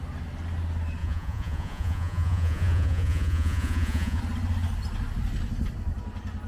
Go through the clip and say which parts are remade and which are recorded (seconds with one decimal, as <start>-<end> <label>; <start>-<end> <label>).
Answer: 0.0-1.0 recorded; 1.0-4.2 remade; 4.2-6.5 recorded